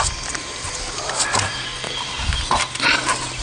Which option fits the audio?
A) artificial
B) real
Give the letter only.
B